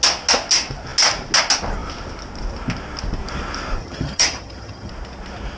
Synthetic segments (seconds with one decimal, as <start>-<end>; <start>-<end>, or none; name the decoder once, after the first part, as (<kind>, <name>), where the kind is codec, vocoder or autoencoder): 3.8-4.9 (vocoder, HiFi-GAN)